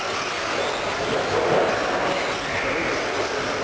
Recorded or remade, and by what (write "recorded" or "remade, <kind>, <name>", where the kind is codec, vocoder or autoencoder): recorded